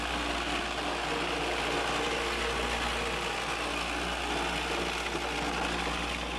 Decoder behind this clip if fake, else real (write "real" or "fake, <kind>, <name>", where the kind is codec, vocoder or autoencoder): real